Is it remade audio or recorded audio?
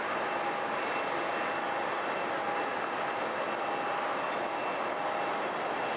recorded